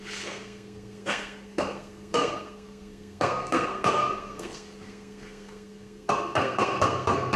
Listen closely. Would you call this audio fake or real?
fake